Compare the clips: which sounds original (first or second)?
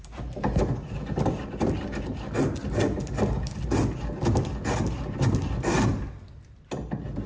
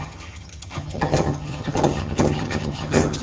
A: first